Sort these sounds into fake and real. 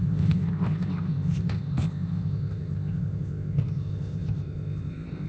fake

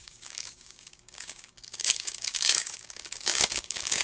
fake